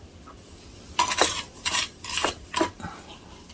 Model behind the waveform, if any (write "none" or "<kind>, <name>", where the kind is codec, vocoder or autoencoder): none